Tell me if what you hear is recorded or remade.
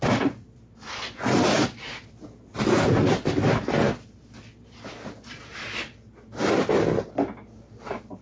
recorded